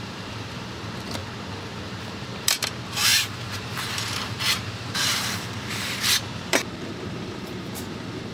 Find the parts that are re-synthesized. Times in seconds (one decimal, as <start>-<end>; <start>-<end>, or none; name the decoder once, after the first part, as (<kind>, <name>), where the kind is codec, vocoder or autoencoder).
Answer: 0.0-1.2 (vocoder, BigVGAN v2); 2.0-8.3